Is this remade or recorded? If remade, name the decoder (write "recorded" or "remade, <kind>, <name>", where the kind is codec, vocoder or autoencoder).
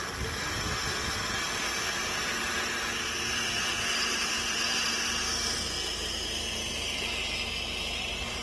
recorded